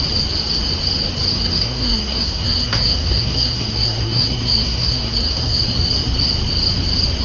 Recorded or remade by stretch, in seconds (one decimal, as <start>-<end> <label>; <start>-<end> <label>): 0.0-1.3 recorded; 1.3-5.6 remade; 5.6-7.2 recorded